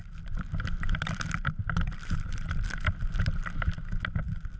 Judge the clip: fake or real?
fake